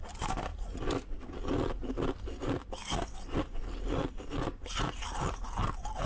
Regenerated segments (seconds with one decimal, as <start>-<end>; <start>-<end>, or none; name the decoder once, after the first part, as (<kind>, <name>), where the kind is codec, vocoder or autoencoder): none